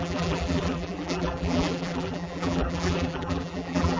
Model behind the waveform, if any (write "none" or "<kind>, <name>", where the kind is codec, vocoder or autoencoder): vocoder, BigVGAN v2